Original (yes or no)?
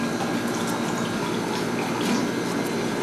yes